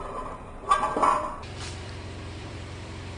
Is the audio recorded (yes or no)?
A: no